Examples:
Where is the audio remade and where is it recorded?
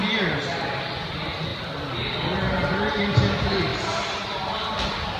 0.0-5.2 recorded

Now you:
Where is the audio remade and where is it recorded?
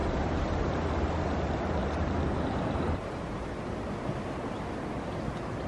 0.0-0.7 remade; 0.7-1.8 recorded; 1.8-3.7 remade; 3.7-5.7 recorded